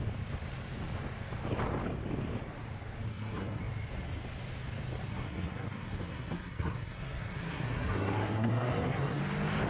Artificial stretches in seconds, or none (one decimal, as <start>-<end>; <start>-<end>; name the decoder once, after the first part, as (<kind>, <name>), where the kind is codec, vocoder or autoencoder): 3.1-3.6 (codec, SNAC); 5.1-9.2